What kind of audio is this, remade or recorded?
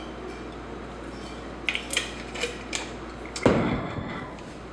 recorded